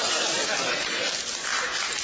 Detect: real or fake real